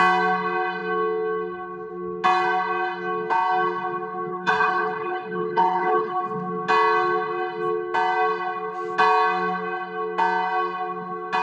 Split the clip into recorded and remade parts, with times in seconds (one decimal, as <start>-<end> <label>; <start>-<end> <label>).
0.0-4.3 recorded; 4.3-6.2 remade; 6.2-11.4 recorded